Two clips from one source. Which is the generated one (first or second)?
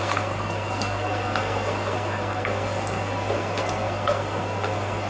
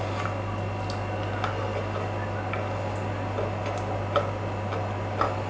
first